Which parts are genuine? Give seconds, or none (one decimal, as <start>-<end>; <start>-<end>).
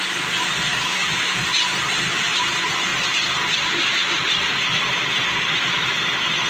0.0-0.7; 1.4-6.5